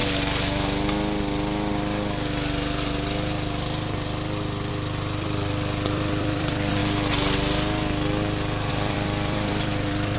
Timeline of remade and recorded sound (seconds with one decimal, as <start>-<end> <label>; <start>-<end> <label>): 0.0-4.7 recorded; 4.7-6.8 remade; 6.8-8.7 recorded; 8.7-10.2 remade